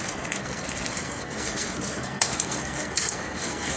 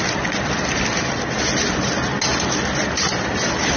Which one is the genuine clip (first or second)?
second